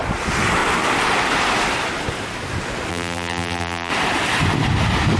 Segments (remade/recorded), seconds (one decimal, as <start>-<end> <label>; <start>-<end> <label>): 0.0-2.9 recorded; 2.9-3.9 remade; 3.9-5.2 recorded